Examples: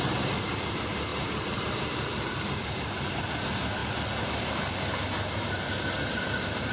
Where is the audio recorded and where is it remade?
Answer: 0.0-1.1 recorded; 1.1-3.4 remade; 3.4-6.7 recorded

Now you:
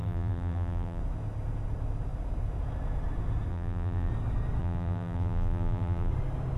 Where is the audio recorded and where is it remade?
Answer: 0.0-1.0 remade; 1.0-3.5 recorded; 3.5-4.1 remade; 4.1-4.6 recorded; 4.6-6.1 remade; 6.1-6.6 recorded